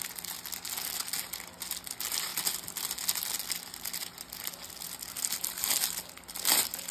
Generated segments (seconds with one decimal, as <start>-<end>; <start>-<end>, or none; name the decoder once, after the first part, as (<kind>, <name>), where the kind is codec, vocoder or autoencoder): none

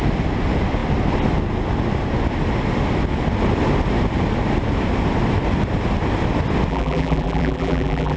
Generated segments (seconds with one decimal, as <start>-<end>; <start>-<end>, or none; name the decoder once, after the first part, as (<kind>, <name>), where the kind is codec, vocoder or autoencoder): 6.7-8.2 (vocoder, BigVGAN v2)

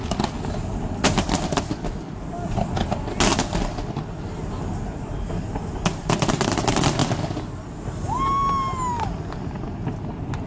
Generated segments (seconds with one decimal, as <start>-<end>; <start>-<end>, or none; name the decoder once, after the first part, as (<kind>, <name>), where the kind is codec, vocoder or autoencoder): none

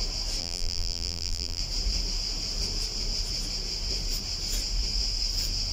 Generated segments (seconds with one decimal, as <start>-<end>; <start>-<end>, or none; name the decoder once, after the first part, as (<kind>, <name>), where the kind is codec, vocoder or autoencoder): 0.4-1.6 (vocoder, BigVGAN v2)

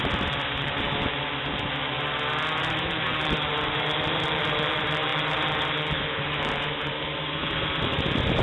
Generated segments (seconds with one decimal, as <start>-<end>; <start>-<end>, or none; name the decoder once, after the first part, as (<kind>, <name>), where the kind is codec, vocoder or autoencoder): 0.0-1.1 (vocoder, BigVGAN v2); 2.6-8.4

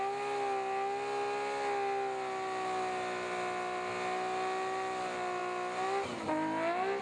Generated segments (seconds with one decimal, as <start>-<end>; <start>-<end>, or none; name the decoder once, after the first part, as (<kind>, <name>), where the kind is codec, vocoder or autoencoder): none

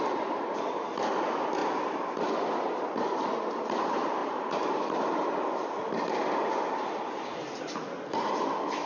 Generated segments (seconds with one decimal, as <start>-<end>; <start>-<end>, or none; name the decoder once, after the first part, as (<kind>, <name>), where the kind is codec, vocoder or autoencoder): 4.2-4.8 (vocoder, BigVGAN v2)

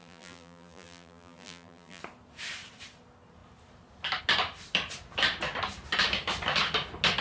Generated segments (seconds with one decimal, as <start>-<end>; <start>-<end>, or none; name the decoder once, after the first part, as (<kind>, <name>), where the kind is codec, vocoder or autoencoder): 0.0-2.0 (vocoder, BigVGAN v2)